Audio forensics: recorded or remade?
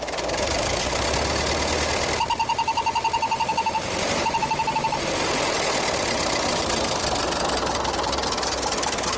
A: recorded